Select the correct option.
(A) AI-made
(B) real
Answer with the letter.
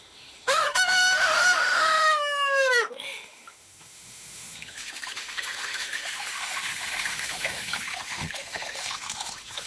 A